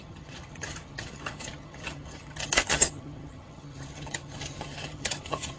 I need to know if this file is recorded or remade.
remade